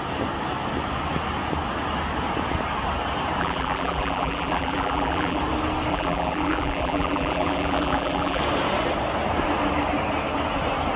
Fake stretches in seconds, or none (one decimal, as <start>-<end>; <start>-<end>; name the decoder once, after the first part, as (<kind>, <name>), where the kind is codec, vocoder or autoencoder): 3.4-5.4 (vocoder, BigVGAN v2); 5.9-8.4